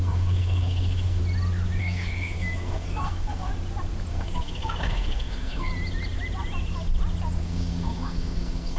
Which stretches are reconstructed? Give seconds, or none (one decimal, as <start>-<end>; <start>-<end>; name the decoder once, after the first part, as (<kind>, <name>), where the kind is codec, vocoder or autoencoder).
0.0-1.2 (codec, SNAC); 1.8-3.5; 4.1-5.7; 7.4-8.8